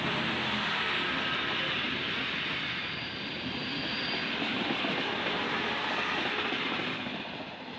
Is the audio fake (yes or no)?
no